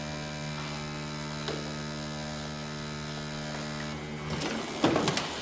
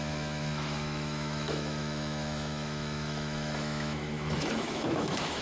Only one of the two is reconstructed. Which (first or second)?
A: second